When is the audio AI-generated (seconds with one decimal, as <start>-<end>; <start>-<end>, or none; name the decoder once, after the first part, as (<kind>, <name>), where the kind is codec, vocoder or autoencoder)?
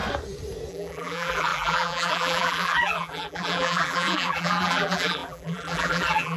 0.7-6.4 (vocoder, BigVGAN v2)